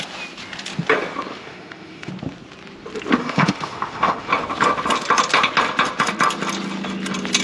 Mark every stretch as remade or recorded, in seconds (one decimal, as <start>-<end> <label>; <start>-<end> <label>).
0.0-1.3 recorded; 1.3-2.1 remade; 2.1-3.2 recorded; 3.2-4.3 remade; 4.3-7.4 recorded